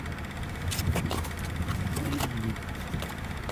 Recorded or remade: recorded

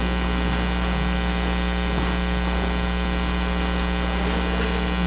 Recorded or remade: recorded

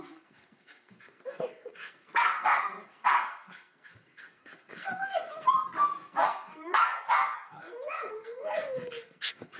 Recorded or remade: remade